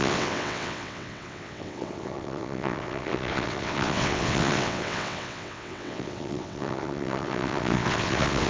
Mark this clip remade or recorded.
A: remade